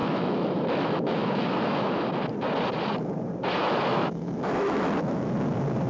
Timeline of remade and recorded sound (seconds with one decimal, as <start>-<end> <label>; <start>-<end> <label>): 0.0-2.1 remade; 2.1-3.6 recorded; 3.6-5.3 remade; 5.3-5.9 recorded

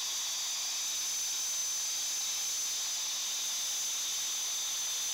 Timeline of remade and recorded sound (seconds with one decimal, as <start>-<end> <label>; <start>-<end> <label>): 0.0-5.1 recorded